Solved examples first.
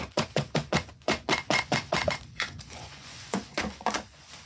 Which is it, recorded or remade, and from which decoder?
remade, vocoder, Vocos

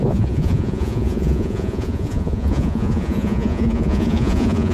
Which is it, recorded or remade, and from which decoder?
remade, vocoder, Vocos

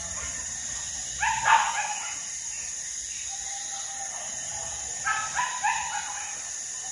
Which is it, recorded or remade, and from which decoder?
recorded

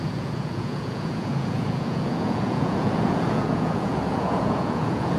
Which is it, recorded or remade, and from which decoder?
remade, vocoder, Vocos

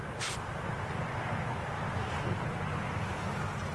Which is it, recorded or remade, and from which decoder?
recorded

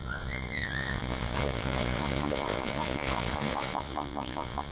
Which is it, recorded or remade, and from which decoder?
remade, vocoder, Vocos